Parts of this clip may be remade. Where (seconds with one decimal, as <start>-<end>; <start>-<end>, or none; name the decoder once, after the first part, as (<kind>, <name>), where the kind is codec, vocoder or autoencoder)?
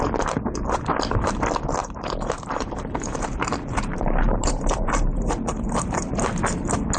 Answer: 1.8-6.0 (vocoder, BigVGAN v2)